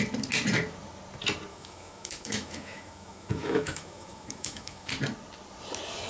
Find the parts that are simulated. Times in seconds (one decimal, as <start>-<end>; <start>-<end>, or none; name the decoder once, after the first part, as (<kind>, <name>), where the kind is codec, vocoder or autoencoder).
1.5-4.9 (autoencoder, DAC-VAE)